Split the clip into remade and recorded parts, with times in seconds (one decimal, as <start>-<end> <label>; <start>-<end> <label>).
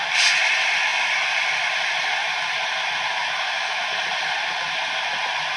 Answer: 0.0-3.2 recorded; 3.2-4.1 remade; 4.1-5.6 recorded